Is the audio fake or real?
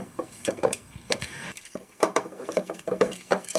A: fake